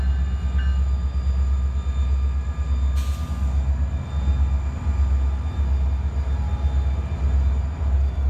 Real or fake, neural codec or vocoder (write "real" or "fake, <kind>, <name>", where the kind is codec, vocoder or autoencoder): real